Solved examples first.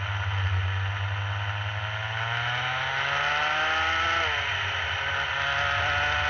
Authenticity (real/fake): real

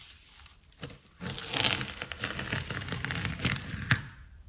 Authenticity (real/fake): real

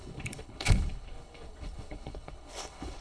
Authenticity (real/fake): fake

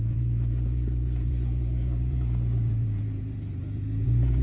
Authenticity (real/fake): fake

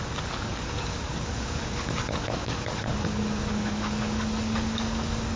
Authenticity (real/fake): fake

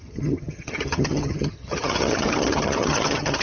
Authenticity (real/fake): fake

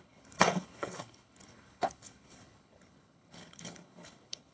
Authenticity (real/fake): fake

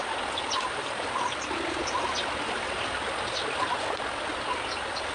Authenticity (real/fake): fake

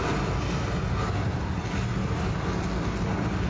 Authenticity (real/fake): real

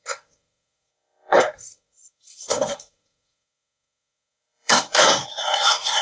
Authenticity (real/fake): fake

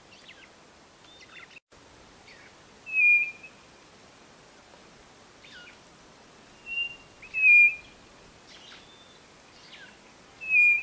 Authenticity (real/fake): real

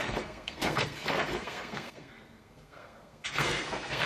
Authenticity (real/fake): fake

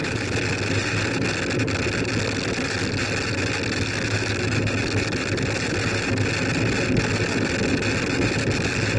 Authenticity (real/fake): real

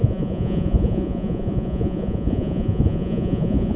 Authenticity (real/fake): fake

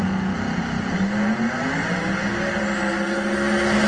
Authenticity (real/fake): real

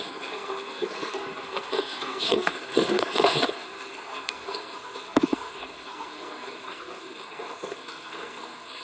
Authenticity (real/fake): fake